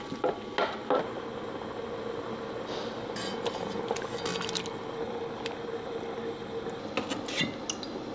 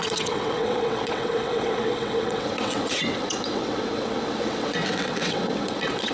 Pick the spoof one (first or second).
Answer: second